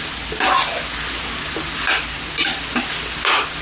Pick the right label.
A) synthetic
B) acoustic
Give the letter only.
B